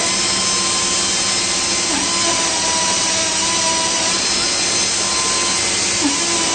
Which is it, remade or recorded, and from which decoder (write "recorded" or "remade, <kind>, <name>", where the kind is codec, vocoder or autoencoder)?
recorded